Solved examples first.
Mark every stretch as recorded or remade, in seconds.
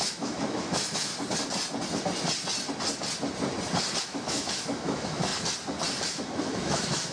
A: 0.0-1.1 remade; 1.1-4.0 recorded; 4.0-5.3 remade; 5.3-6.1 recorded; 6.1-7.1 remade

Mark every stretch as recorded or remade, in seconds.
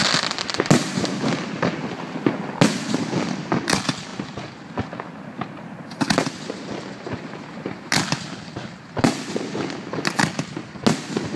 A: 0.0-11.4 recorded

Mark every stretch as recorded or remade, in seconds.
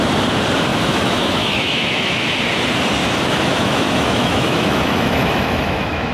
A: 0.0-0.7 recorded; 0.7-2.4 remade; 2.4-3.0 recorded; 3.0-6.1 remade